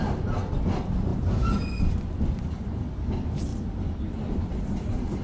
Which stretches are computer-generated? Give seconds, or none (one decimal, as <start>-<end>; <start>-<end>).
none